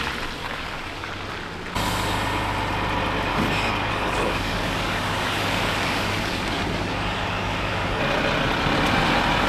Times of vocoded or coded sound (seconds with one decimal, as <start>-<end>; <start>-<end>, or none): 0.4-1.1; 3.3-8.0